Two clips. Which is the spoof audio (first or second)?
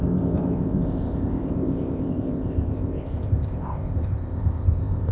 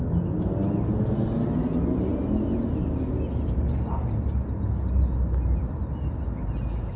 first